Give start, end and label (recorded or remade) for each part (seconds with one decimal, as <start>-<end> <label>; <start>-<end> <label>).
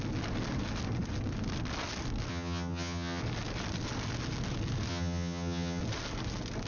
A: 0.0-2.3 recorded; 2.3-3.2 remade; 3.2-4.9 recorded; 4.9-5.8 remade; 5.8-6.7 recorded